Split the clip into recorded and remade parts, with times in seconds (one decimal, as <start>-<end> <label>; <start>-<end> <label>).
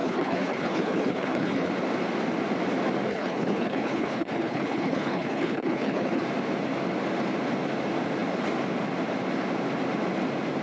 0.0-1.7 remade; 1.7-3.1 recorded; 3.1-6.2 remade; 6.2-10.6 recorded